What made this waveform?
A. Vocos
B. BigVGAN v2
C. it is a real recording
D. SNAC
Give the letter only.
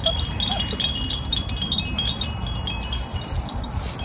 C